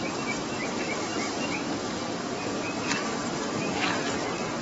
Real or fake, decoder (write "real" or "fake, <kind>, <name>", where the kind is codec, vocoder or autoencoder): real